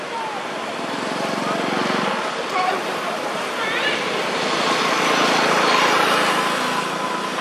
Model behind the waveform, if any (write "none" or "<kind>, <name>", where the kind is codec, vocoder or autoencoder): none